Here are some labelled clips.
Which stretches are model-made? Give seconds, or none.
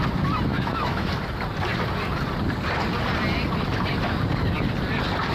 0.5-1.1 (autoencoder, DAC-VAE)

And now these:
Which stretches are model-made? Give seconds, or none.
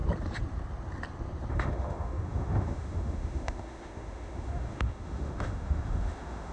1.5-6.5 (autoencoder, DAC-VAE)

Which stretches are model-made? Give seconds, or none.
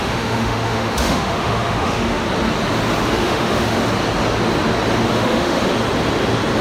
0.0-2.2 (autoencoder, DAC-VAE); 3.1-3.8; 5.1-5.6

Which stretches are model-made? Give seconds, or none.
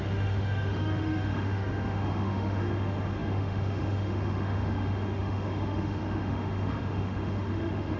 0.0-8.0 (autoencoder, DAC-VAE)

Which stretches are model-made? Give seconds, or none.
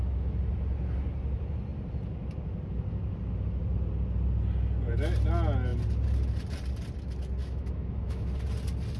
7.4-8.3 (autoencoder, DAC-VAE)